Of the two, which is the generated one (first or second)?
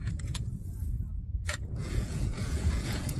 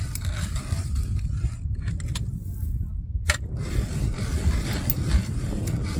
first